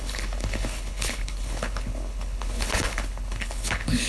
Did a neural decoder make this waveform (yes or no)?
yes